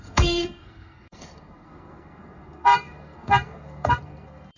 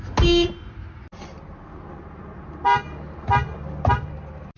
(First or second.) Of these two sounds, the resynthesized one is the first